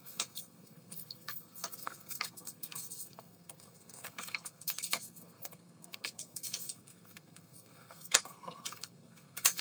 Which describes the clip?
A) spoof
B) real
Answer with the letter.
A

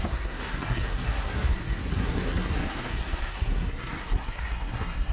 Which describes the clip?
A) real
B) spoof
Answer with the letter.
B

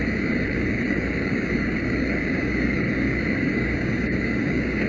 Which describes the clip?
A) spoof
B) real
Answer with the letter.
A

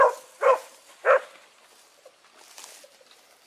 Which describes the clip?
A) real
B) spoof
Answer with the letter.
A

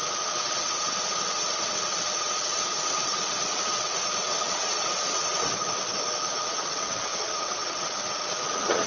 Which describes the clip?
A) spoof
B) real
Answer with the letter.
A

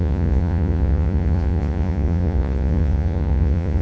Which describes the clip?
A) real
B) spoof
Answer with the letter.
B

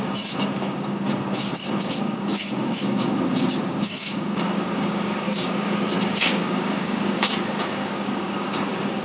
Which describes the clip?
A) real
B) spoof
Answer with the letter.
B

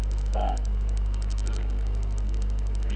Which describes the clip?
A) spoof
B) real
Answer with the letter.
A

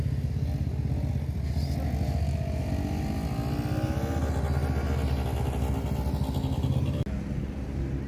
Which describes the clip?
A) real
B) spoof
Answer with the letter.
A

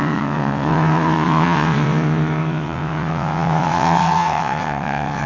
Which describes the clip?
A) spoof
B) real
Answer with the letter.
A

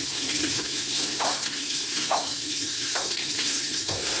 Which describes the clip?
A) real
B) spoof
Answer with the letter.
B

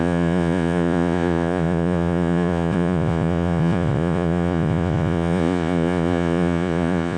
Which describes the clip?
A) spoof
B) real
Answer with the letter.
A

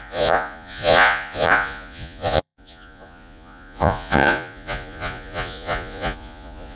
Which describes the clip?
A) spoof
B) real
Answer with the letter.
A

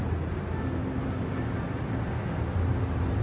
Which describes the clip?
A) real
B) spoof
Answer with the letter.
A